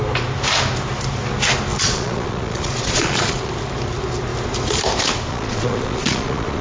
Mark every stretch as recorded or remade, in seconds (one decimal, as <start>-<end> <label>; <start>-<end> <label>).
0.0-1.7 recorded; 1.7-3.5 remade; 3.5-5.3 recorded; 5.3-6.6 remade